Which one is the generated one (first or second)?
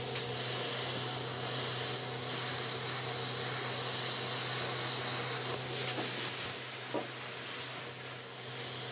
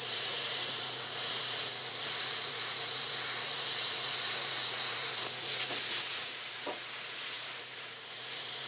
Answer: second